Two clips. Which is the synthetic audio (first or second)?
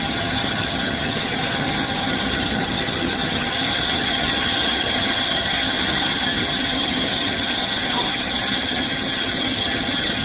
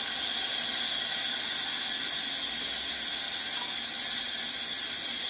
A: first